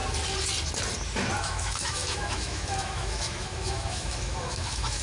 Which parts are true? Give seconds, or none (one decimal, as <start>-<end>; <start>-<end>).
0.0-1.4